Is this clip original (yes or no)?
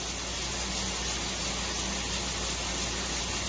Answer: yes